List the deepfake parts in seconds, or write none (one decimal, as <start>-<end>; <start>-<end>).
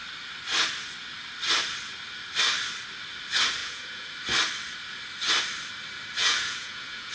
3.6-4.1; 6.2-7.1